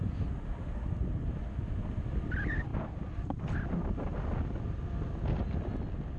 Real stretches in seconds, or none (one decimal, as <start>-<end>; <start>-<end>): 0.0-6.2